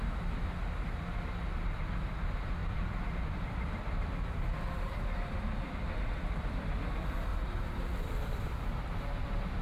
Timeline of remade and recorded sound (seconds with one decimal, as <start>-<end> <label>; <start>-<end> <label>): 0.0-2.6 recorded; 2.6-6.7 remade; 6.7-7.3 recorded; 7.3-9.0 remade; 9.0-9.6 recorded